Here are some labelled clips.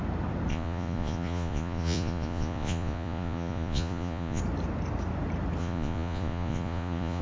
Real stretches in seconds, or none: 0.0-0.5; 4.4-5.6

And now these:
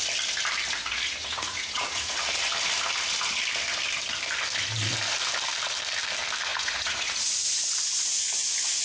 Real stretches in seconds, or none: 0.0-1.2; 2.1-6.5; 7.4-8.8

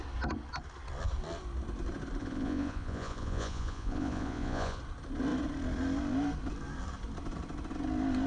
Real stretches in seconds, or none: 0.0-2.2; 4.8-8.3

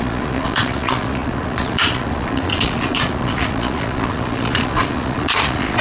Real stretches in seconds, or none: none

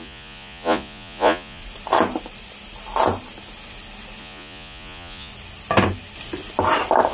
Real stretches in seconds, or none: 1.6-4.2; 5.3-7.1